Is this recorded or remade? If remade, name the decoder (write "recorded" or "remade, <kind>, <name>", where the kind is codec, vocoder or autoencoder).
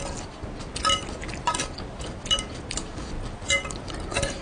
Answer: recorded